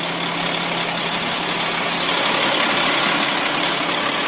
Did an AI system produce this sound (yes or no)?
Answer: no